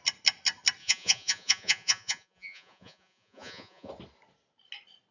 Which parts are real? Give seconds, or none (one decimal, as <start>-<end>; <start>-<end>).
0.0-0.8; 3.9-5.1